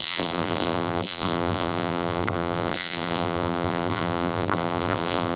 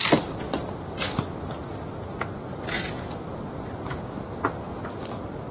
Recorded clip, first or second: second